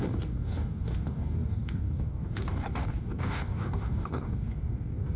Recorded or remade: remade